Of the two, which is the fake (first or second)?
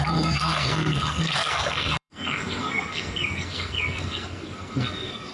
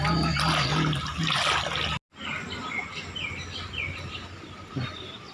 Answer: first